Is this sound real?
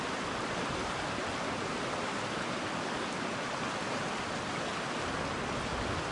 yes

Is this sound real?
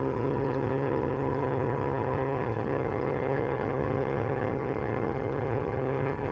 no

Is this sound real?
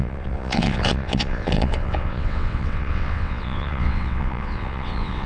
no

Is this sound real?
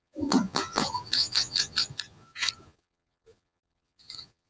no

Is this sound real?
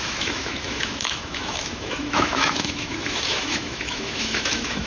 no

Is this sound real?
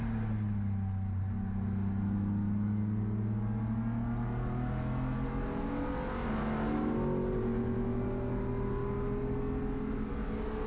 yes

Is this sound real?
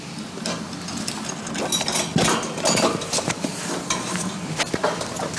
yes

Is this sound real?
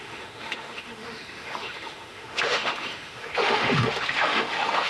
no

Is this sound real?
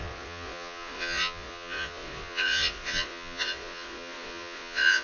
no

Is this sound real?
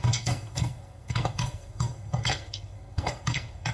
no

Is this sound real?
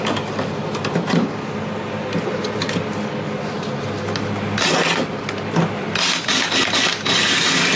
yes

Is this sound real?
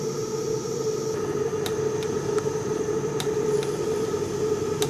yes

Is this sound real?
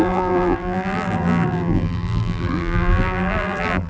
no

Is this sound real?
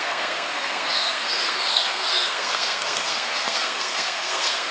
no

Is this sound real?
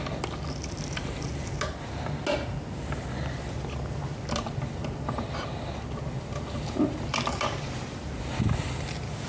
yes